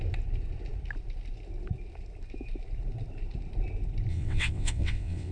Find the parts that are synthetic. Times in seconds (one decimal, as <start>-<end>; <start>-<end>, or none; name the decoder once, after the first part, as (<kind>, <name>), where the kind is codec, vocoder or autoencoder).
4.1-5.3 (vocoder, WaveNeXt)